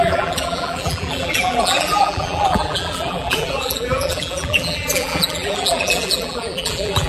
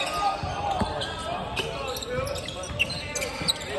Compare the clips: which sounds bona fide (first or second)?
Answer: second